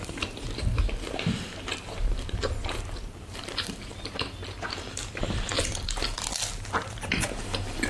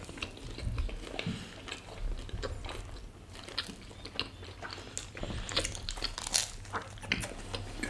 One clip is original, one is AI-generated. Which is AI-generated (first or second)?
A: first